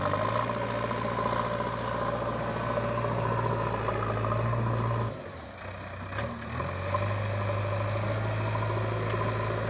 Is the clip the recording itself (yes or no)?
yes